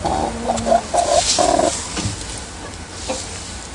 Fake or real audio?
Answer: real